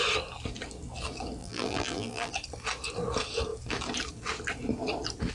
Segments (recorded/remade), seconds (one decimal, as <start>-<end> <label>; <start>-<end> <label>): 0.0-1.4 recorded; 1.4-2.3 remade; 2.3-5.3 recorded